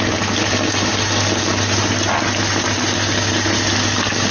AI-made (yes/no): no